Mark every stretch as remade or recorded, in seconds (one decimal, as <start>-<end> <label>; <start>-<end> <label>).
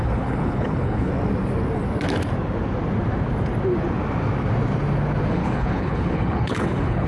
0.0-1.1 remade; 1.1-5.3 recorded; 5.3-7.1 remade